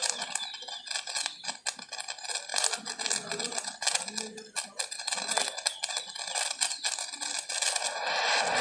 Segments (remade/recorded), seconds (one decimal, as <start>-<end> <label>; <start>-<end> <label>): 0.0-8.6 recorded